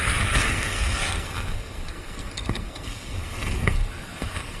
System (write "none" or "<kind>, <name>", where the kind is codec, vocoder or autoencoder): codec, SNAC